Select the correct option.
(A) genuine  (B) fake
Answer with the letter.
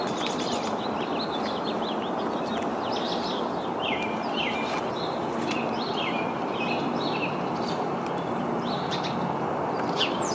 B